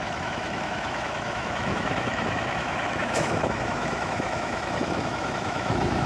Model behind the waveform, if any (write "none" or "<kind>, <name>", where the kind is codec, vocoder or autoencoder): autoencoder, DAC-VAE